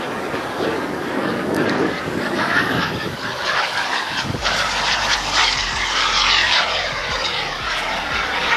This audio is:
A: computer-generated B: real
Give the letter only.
A